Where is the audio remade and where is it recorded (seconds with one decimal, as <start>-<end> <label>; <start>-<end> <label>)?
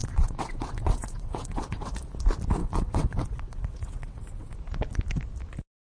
0.0-1.9 remade; 1.9-2.6 recorded; 2.6-4.5 remade; 4.5-5.9 recorded